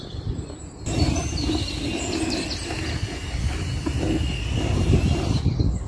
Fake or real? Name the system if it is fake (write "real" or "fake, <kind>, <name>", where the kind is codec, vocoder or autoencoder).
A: real